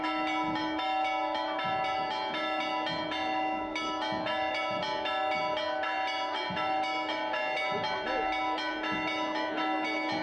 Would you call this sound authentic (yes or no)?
yes